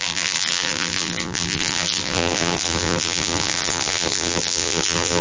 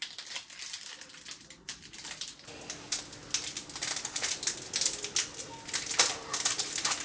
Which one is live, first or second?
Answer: second